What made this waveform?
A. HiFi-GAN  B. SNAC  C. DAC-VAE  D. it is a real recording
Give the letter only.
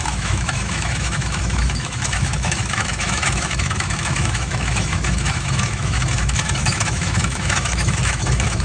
C